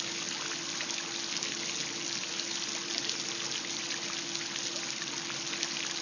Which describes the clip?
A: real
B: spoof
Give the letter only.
A